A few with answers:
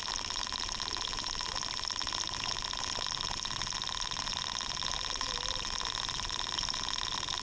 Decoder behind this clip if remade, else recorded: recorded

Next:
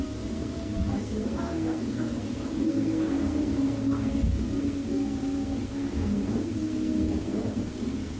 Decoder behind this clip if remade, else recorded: remade, codec, SNAC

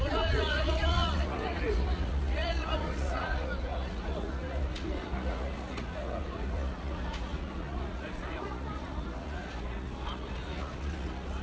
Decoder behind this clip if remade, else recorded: remade, vocoder, Vocos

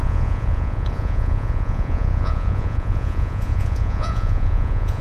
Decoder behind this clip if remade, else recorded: remade, vocoder, Vocos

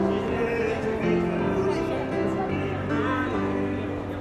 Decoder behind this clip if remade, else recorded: recorded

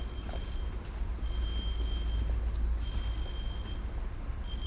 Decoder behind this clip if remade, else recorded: recorded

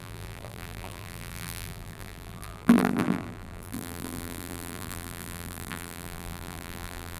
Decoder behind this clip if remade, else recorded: remade, vocoder, BigVGAN v2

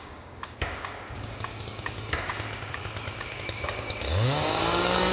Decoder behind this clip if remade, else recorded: remade, codec, DAC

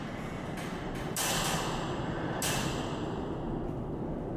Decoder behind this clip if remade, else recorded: recorded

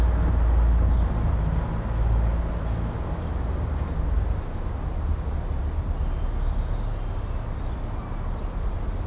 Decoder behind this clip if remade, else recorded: recorded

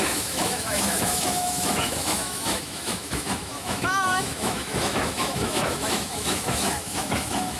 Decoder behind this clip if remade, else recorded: remade, autoencoder, DAC-VAE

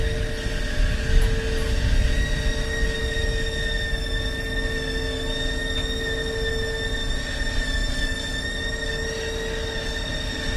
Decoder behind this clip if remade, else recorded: recorded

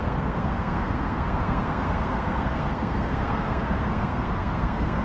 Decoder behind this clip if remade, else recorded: remade, codec, SNAC